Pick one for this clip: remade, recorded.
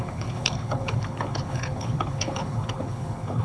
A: remade